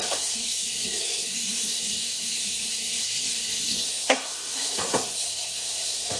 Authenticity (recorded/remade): remade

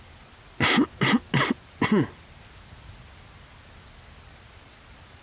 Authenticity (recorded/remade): recorded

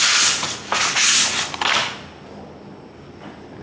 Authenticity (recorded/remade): recorded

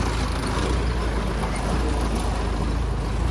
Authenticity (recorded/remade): recorded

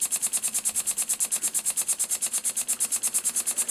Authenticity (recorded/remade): recorded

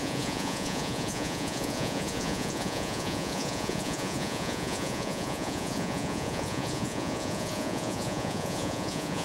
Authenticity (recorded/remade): remade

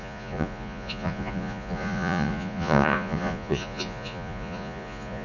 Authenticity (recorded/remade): remade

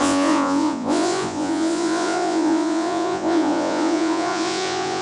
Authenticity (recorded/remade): remade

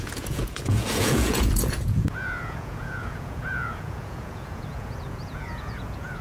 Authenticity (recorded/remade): remade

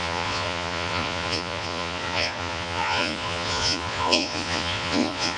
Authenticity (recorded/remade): remade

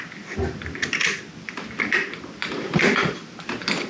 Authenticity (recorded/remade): recorded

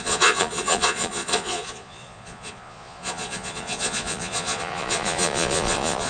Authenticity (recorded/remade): remade